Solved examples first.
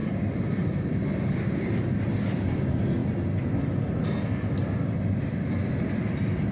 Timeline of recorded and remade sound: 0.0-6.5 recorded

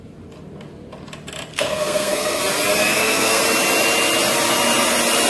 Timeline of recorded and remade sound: 0.0-1.5 recorded; 1.5-2.4 remade; 2.4-2.9 recorded; 2.9-3.4 remade; 3.4-5.3 recorded

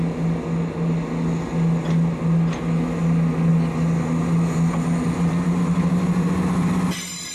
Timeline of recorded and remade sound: 0.0-7.3 recorded

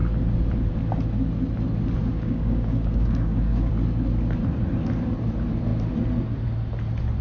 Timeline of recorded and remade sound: 0.0-2.0 recorded; 2.0-3.7 remade; 3.7-7.2 recorded

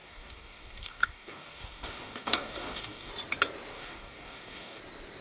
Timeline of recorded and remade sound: 0.0-3.1 remade; 3.1-3.7 recorded; 3.7-4.8 remade; 4.8-5.2 recorded